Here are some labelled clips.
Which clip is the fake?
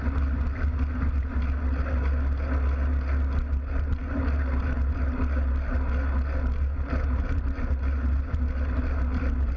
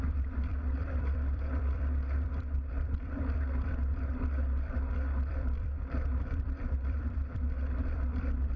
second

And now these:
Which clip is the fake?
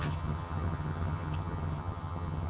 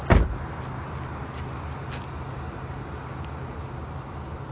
first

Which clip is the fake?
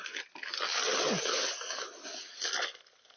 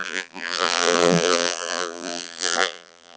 second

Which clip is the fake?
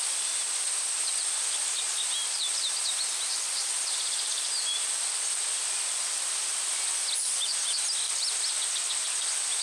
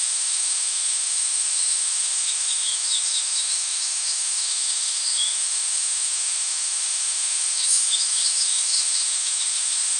second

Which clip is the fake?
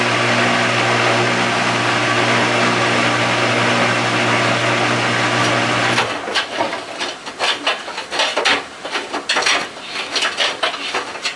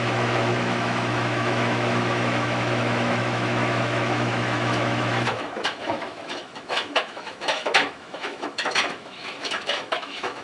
second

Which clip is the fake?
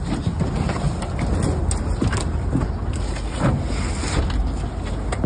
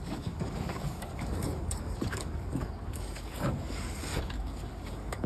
second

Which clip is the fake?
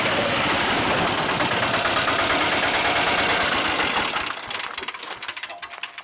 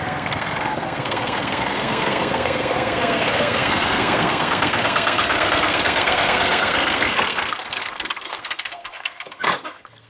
second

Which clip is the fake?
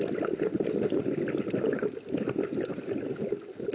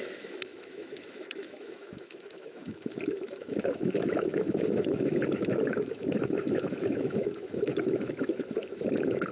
second